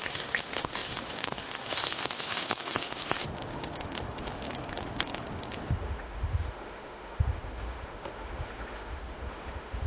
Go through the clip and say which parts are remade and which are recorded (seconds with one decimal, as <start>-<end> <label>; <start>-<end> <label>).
0.0-9.9 remade